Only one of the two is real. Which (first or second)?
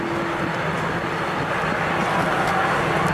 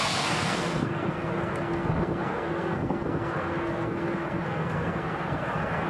first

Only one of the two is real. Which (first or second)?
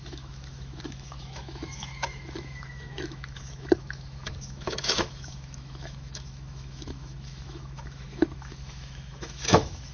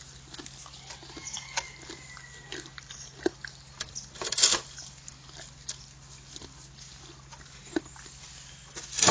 second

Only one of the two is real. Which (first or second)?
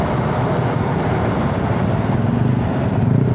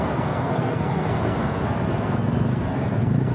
first